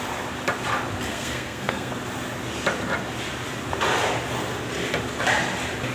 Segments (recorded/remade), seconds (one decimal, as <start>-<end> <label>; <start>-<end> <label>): 0.0-1.1 recorded; 1.1-1.9 remade; 1.9-5.9 recorded